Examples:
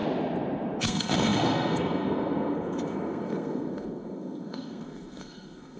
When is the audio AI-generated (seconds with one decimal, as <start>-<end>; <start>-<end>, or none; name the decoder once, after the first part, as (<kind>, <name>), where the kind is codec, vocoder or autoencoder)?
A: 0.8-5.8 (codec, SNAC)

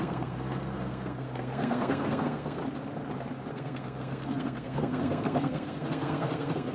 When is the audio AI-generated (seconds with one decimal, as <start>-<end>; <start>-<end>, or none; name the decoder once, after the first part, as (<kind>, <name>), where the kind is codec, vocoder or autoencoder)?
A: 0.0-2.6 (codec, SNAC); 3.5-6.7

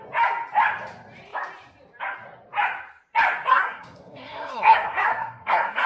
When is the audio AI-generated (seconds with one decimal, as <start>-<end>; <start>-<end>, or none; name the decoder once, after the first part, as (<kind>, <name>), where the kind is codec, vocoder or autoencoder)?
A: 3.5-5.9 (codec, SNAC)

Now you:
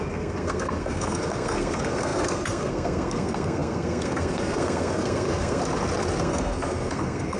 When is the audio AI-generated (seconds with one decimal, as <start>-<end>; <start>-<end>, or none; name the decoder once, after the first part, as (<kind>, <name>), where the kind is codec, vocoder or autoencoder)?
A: 0.0-5.6 (codec, SNAC); 6.2-7.4

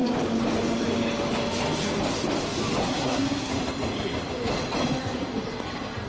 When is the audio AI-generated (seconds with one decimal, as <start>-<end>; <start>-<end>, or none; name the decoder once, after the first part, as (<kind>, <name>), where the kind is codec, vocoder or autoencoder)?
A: 2.8-3.5 (codec, SNAC)